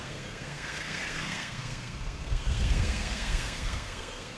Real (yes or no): no